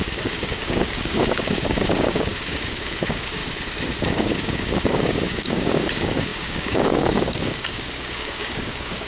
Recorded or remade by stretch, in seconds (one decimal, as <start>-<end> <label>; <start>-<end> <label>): 0.0-3.4 remade; 3.4-4.0 recorded; 4.0-9.1 remade

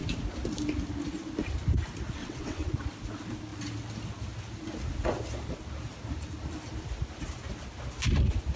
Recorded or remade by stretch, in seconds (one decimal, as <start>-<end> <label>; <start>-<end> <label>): 0.0-2.2 recorded; 2.2-2.7 remade; 2.7-8.6 recorded

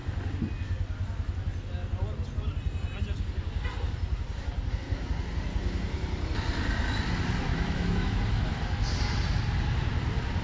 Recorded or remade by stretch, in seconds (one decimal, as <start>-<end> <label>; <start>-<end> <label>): 0.0-7.5 recorded; 7.5-8.2 remade; 8.2-10.4 recorded

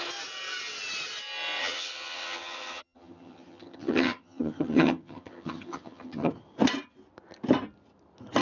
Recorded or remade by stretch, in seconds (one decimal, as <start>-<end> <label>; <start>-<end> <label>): 0.0-1.6 recorded; 1.6-6.3 remade; 6.3-8.4 recorded

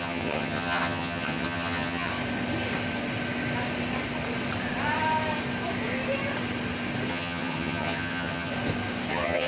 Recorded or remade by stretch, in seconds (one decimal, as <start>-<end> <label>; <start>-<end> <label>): 0.0-2.1 remade; 2.1-7.1 recorded; 7.1-8.5 remade; 8.5-9.1 recorded; 9.1-9.5 remade

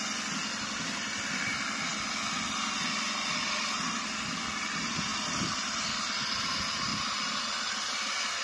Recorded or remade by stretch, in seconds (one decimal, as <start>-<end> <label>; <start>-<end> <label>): 0.0-8.4 recorded

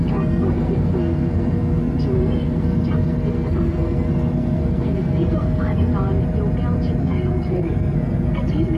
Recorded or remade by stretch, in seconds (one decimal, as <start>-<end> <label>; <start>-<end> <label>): 0.0-5.9 remade; 5.9-7.0 recorded; 7.0-8.8 remade

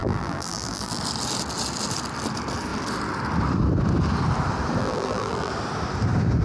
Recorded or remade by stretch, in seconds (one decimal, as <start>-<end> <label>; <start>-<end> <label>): 0.0-1.0 remade; 1.0-4.8 recorded; 4.8-5.5 remade; 5.5-6.4 recorded